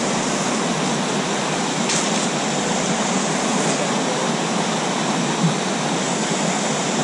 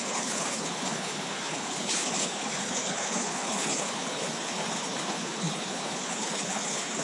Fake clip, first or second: second